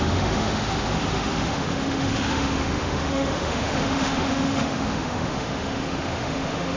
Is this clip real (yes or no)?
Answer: no